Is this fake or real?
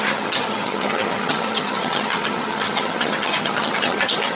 fake